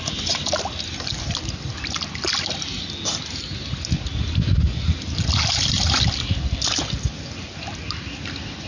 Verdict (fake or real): real